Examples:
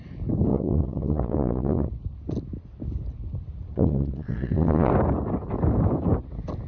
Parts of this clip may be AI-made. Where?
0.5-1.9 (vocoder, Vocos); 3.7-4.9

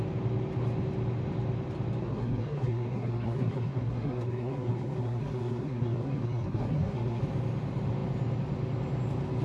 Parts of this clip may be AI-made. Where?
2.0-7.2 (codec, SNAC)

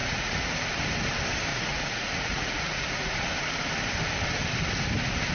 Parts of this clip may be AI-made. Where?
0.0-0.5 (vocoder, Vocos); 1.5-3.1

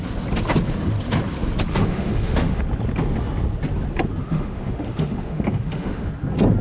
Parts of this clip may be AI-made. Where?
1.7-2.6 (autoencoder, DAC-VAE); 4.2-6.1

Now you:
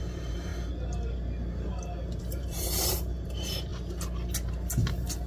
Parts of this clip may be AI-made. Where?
0.0-0.5 (vocoder, BigVGAN v2); 2.2-3.7

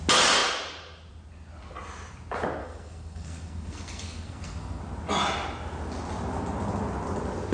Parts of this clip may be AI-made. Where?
2.6-4.8 (codec, SNAC)